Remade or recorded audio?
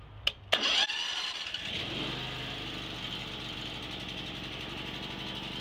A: recorded